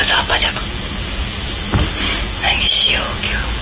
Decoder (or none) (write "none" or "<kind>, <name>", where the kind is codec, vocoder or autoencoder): none